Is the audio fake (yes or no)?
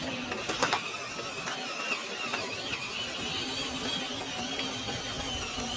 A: no